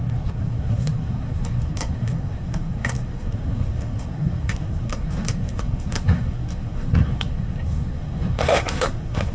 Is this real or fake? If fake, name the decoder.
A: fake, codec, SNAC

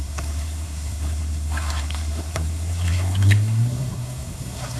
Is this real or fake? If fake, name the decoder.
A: fake, codec, SNAC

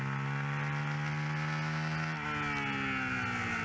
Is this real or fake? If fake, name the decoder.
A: real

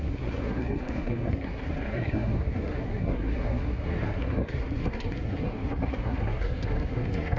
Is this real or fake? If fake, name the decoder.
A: fake, codec, SNAC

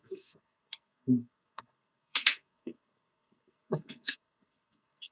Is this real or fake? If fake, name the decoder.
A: fake, codec, SNAC